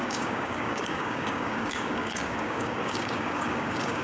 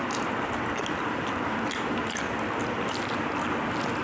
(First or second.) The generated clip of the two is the first